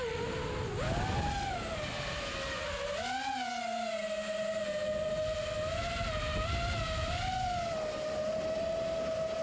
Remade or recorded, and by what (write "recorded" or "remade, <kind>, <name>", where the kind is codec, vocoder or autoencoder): recorded